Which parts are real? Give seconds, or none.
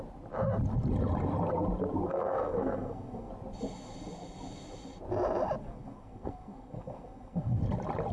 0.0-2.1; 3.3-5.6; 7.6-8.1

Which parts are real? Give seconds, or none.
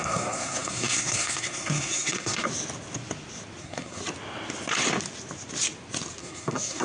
2.5-3.6; 4.0-6.2